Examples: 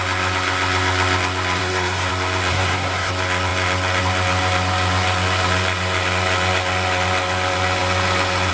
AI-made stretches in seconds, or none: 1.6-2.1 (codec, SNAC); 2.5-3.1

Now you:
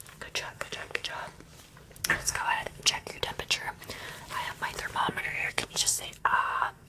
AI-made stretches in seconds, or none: 0.5-1.1 (codec, SNAC); 2.2-3.2; 5.1-6.9